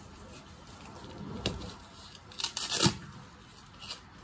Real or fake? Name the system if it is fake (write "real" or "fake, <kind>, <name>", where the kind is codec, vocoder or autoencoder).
real